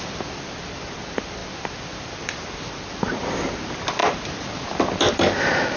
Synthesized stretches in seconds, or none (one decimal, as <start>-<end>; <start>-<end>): none